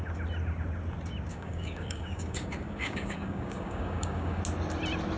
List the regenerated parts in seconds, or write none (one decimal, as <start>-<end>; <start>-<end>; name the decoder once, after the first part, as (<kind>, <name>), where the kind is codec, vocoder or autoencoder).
1.3-4.4 (codec, DAC)